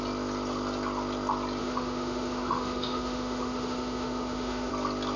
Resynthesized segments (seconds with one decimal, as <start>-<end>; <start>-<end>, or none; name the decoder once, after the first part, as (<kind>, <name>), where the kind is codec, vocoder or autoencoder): 1.6-4.7 (autoencoder, DAC-VAE)